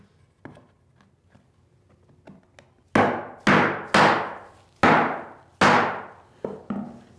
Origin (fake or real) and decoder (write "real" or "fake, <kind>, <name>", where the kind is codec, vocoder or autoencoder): real